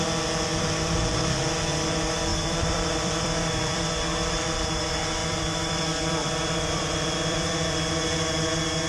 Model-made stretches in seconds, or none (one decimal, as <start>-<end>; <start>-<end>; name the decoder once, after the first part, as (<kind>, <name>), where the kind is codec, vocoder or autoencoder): 2.3-3.8 (vocoder, BigVGAN v2); 5.2-7.5